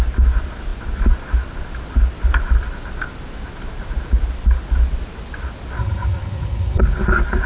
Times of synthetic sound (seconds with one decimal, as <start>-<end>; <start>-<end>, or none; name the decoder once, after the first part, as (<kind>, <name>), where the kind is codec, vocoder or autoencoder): 5.8-6.8 (vocoder, HiFi-GAN)